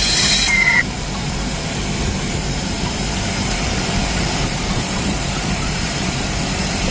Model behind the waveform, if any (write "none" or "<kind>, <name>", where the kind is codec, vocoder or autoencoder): vocoder, BigVGAN v2